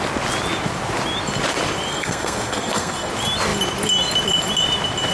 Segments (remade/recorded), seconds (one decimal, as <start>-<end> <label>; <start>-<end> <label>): 0.0-1.9 recorded; 1.9-3.1 remade; 3.1-5.1 recorded